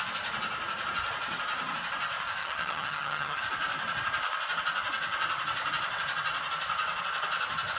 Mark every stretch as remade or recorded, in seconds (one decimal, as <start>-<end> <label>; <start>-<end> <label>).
0.0-2.4 recorded; 2.4-3.4 remade; 3.4-7.8 recorded